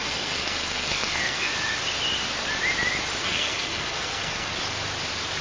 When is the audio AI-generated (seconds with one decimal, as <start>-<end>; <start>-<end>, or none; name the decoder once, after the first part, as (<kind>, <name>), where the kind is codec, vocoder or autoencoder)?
0.0-1.5 (codec, SNAC); 3.2-4.5